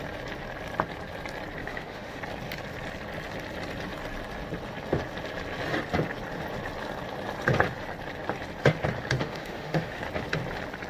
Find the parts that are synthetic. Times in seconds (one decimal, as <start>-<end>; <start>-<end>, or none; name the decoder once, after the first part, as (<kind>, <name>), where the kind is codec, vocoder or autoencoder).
1.6-2.2 (autoencoder, DAC-VAE); 9.2-10.0